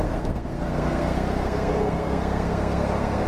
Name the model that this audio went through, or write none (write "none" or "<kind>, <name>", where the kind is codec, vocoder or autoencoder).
codec, SNAC